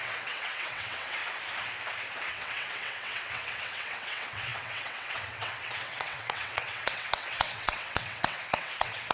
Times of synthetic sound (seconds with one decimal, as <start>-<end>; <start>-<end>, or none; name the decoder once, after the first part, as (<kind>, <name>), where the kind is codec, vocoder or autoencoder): 0.0-1.2 (vocoder, WaveNeXt); 2.3-9.1